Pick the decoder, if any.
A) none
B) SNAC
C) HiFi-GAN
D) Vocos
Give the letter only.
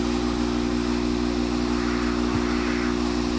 A